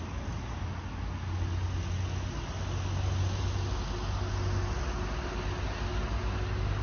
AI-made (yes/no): no